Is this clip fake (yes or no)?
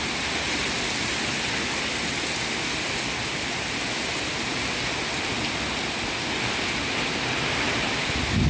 no